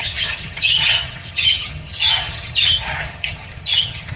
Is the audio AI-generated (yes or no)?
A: yes